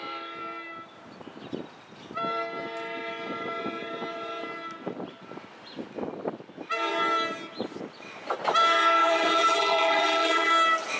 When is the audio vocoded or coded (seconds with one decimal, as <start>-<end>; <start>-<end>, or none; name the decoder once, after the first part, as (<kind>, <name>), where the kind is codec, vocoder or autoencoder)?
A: 9.0-10.5 (vocoder, BigVGAN v2)